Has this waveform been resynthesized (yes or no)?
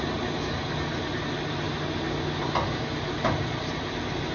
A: no